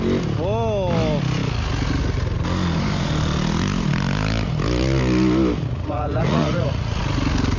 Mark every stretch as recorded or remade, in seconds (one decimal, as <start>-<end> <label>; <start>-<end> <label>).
0.0-5.7 recorded; 5.7-7.0 remade; 7.0-7.6 recorded